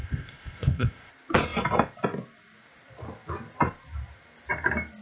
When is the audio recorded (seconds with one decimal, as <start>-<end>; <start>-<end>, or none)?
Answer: 1.1-5.0